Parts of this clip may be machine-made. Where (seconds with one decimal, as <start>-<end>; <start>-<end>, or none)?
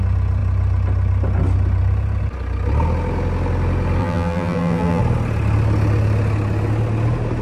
4.0-5.0